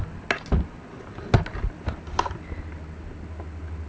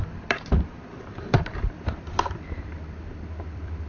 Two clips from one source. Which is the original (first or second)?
first